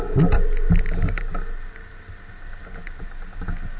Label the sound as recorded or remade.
recorded